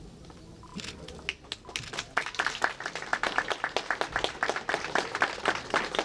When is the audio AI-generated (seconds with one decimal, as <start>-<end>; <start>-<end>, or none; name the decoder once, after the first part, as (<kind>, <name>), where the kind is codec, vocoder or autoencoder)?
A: none